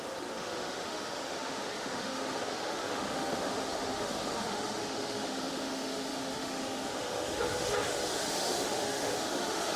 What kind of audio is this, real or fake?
fake